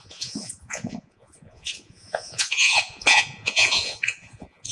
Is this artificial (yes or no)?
yes